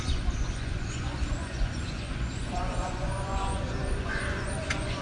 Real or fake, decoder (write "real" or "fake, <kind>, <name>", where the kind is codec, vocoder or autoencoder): fake, vocoder, Vocos